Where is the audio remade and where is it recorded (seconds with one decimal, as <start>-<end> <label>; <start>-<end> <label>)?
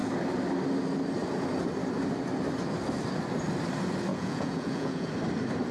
0.0-4.1 recorded; 4.1-5.1 remade; 5.1-5.7 recorded